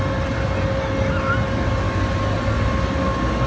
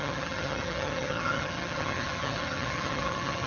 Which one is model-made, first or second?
second